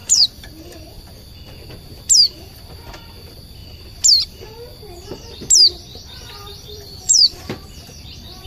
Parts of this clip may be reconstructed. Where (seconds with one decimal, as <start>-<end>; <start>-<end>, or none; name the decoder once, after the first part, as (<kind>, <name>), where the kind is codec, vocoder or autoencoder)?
0.0-1.3 (vocoder, BigVGAN v2); 5.9-7.4